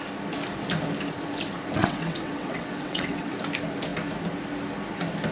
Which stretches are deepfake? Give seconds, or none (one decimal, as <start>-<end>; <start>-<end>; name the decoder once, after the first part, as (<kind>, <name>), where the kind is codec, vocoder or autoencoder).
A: 1.8-3.3 (vocoder, WaveNeXt)